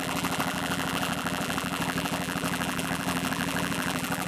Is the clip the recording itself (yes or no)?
no